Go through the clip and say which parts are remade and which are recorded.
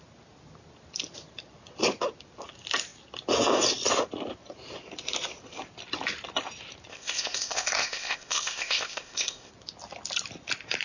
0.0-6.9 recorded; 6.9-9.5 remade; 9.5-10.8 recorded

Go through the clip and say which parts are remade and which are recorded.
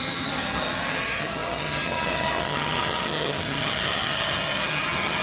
0.0-5.2 remade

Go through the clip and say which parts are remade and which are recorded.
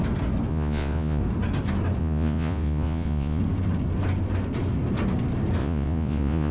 0.0-0.5 recorded; 0.5-1.2 remade; 1.2-2.0 recorded; 2.0-3.4 remade; 3.4-5.6 recorded; 5.6-6.5 remade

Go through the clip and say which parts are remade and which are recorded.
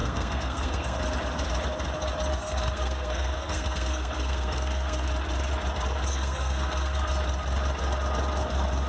0.0-1.0 remade; 1.0-2.3 recorded; 2.3-5.1 remade; 5.1-6.1 recorded; 6.1-7.1 remade; 7.1-8.9 recorded